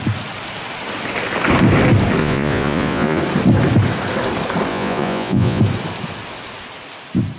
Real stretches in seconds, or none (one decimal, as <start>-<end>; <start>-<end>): 0.0-2.2; 3.2-4.7; 5.6-7.4